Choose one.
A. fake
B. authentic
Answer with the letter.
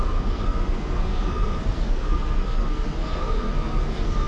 A